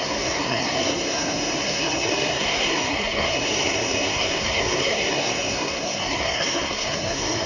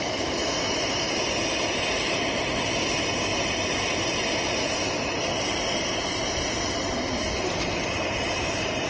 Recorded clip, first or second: second